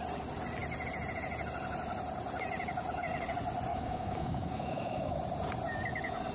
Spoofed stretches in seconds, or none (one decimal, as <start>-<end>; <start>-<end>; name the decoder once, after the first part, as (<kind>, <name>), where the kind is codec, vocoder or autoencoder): 3.7-5.2 (autoencoder, DAC-VAE)